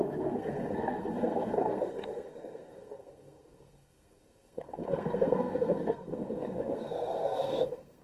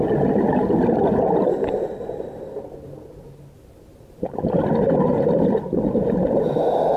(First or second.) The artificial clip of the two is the first